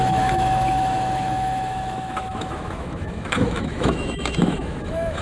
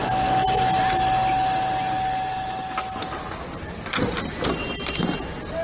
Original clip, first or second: second